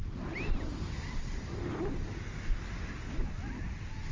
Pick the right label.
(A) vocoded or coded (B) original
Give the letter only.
B